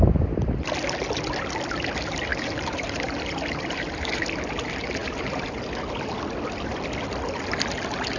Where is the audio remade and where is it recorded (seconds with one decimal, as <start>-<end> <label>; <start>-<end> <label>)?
0.0-2.3 recorded; 2.3-3.2 remade; 3.2-5.0 recorded; 5.0-5.6 remade; 5.6-8.2 recorded